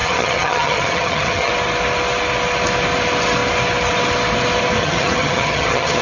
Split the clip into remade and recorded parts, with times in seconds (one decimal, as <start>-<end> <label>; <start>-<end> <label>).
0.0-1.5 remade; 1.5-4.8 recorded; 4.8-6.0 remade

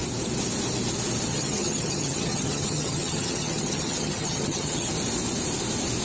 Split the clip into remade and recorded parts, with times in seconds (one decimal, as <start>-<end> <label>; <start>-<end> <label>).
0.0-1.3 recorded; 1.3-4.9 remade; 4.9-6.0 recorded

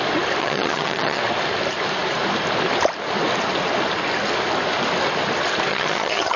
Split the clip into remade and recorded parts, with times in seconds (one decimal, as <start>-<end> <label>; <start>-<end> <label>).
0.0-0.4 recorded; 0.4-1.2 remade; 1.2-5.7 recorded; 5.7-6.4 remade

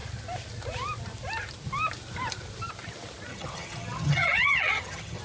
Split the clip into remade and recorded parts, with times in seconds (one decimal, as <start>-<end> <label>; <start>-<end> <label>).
0.0-3.3 recorded; 3.3-5.2 remade